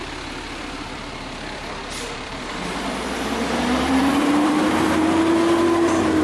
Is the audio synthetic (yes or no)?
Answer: yes